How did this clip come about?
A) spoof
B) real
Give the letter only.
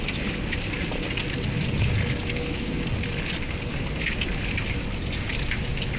B